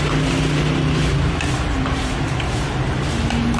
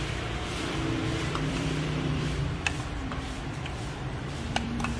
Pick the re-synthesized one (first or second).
second